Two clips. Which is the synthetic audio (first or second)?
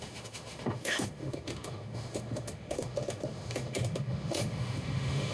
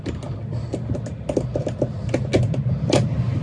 first